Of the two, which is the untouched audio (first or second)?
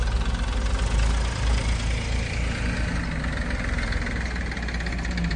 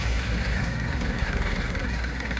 first